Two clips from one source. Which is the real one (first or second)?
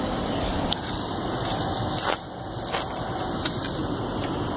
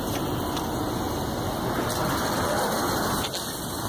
second